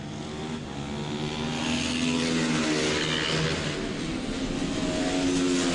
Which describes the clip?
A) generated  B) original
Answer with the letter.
B